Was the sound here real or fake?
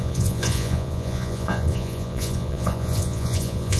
fake